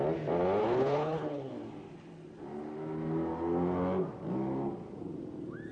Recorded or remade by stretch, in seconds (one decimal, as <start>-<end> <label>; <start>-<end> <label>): 0.0-0.6 recorded; 0.6-1.5 remade; 1.5-5.7 recorded